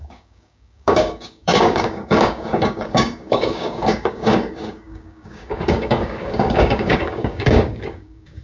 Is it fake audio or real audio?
fake